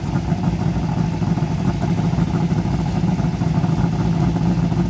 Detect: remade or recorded recorded